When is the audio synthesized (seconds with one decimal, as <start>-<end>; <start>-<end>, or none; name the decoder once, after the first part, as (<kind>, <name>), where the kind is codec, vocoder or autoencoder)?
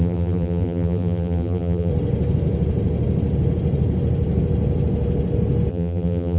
0.0-1.9 (vocoder, BigVGAN v2); 5.7-6.4